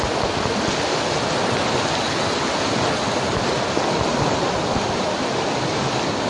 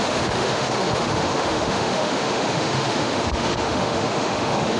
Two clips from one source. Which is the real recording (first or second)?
first